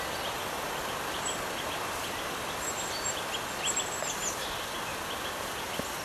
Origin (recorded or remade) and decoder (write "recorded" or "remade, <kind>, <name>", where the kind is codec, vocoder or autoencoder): remade, vocoder, BigVGAN v2